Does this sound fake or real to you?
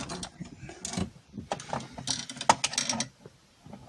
real